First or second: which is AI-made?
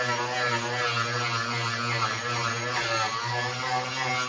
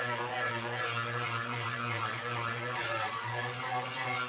second